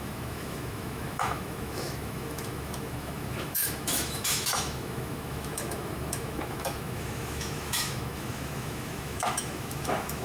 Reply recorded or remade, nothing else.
remade